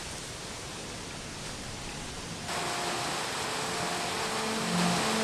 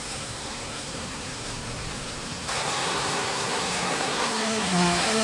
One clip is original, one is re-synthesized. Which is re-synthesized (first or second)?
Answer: second